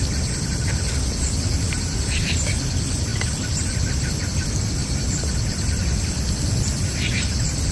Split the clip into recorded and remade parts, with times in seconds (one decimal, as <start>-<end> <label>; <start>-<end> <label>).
0.0-7.7 recorded